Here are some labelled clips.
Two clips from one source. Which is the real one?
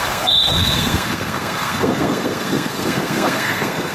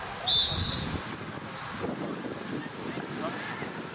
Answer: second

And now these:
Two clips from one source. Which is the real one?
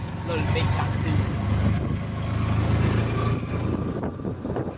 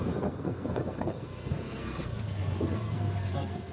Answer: first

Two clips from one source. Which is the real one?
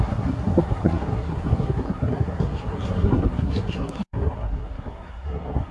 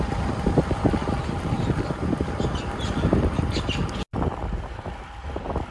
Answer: second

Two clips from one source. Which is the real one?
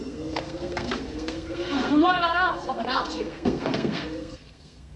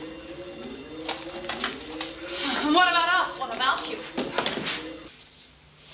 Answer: second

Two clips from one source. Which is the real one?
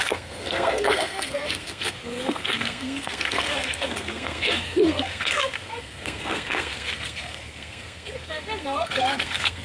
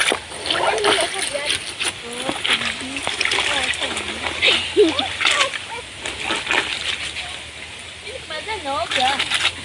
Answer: second